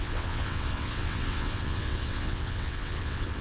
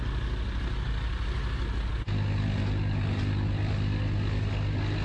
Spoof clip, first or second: first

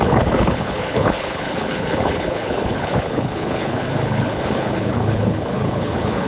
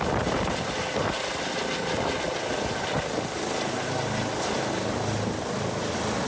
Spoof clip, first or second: first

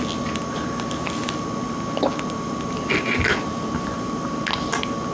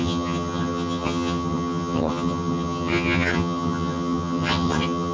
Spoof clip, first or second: second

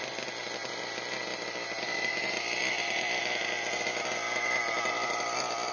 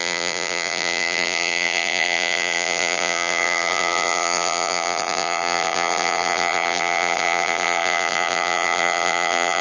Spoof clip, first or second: second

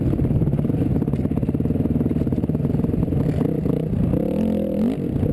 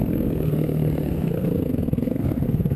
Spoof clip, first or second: second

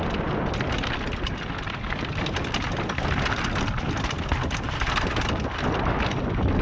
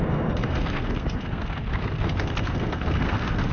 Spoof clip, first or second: second